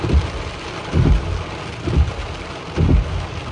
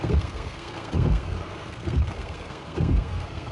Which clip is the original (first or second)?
first